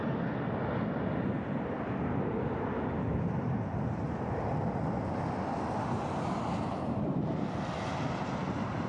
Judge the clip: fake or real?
real